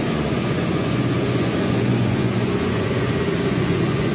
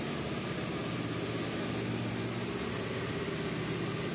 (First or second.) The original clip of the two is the second